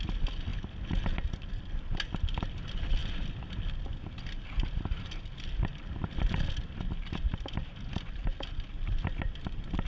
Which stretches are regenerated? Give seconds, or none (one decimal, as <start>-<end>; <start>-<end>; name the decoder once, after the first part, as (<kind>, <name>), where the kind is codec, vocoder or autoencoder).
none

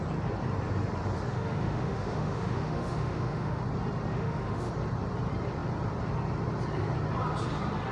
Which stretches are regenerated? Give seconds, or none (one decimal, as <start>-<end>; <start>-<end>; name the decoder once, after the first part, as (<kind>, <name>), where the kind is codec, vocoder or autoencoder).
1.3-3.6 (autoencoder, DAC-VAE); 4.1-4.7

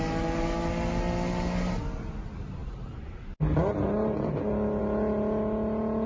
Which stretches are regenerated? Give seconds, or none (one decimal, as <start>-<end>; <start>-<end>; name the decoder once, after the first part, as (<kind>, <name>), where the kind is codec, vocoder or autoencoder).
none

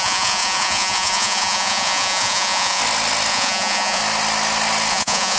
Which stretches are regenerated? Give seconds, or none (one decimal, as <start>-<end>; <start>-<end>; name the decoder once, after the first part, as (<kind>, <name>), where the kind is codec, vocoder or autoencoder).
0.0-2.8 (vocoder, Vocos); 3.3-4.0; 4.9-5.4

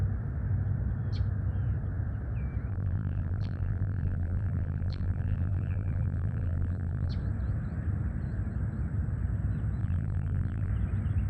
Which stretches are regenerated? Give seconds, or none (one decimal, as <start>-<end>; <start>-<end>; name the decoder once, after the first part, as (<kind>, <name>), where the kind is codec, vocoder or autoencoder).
2.7-7.1 (vocoder, BigVGAN v2); 9.8-10.7